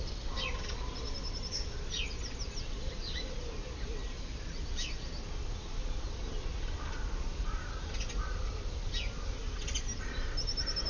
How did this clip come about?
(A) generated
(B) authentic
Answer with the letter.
B